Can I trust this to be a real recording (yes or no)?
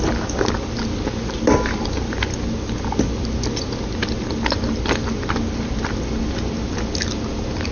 yes